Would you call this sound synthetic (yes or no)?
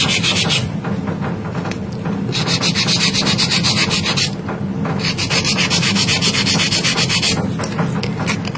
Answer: no